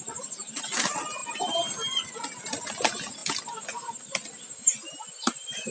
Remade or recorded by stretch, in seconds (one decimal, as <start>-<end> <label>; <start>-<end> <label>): 0.0-5.7 recorded